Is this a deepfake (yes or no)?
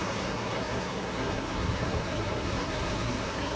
yes